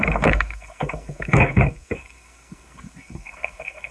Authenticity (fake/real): fake